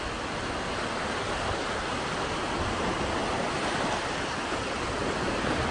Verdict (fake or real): real